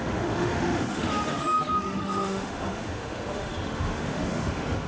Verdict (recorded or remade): remade